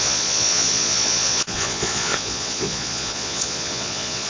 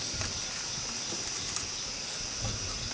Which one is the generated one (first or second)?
first